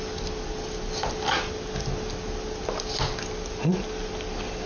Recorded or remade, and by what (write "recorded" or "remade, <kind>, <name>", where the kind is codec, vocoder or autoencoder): recorded